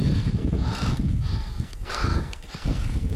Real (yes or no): no